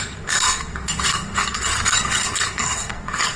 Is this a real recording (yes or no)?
no